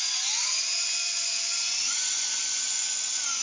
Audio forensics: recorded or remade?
remade